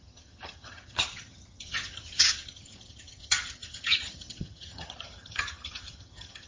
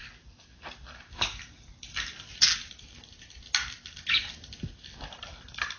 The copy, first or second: first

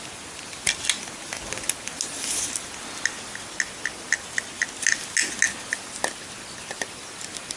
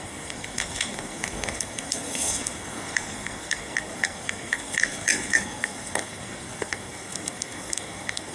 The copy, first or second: second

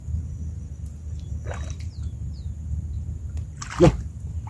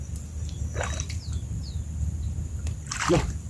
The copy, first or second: second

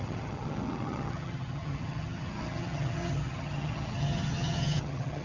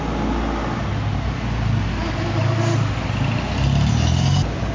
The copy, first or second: first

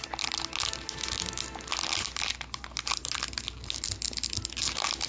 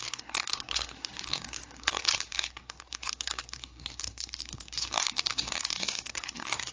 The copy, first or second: second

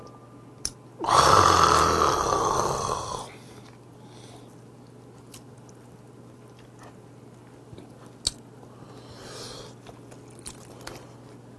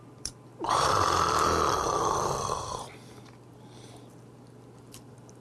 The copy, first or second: second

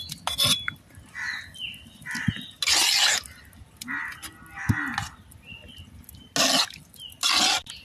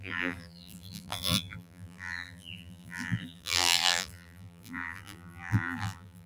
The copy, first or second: second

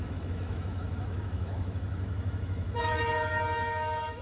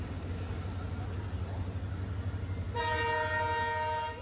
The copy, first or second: first